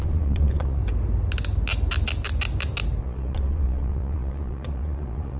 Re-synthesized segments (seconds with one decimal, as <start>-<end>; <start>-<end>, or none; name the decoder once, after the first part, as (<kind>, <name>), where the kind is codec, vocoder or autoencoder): 0.0-0.8 (vocoder, Vocos); 3.0-5.4